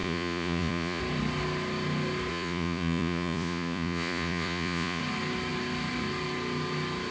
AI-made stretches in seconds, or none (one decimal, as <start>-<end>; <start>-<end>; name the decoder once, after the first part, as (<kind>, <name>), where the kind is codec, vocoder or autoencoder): 0.0-1.0 (vocoder, Vocos); 2.3-5.0